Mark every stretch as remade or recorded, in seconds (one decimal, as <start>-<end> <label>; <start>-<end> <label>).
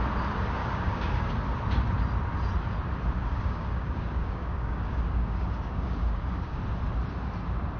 0.0-0.6 recorded; 0.6-1.3 remade; 1.3-3.2 recorded; 3.2-6.6 remade; 6.6-7.8 recorded